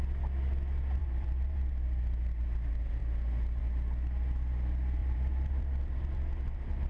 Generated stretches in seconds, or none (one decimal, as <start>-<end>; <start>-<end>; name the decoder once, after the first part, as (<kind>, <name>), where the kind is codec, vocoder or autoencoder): 1.0-1.7 (vocoder, BigVGAN v2); 5.0-6.9